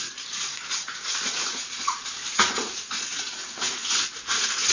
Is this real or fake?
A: fake